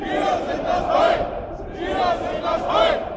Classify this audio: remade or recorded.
remade